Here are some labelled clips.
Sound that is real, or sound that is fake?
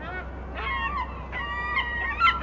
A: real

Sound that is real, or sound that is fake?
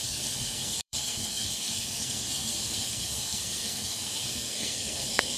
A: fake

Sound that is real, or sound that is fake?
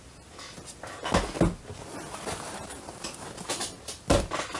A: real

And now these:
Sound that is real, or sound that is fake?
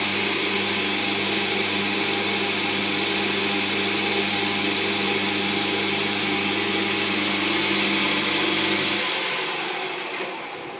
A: real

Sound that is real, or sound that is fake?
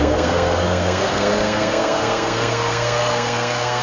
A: fake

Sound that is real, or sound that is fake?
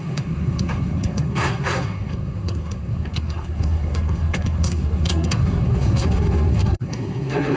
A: fake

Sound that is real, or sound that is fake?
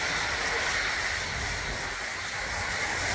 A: real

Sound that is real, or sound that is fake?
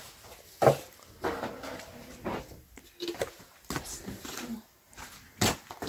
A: real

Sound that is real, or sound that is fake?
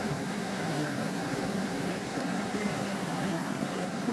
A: fake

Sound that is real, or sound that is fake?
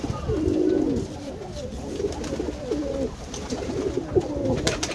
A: real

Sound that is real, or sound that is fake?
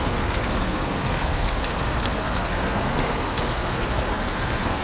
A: fake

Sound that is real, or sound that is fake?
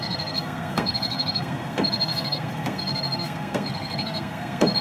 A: fake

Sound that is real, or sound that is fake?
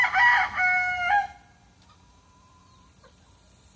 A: real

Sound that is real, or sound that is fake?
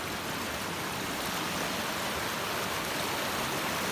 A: real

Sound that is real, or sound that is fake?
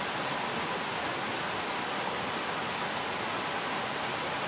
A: real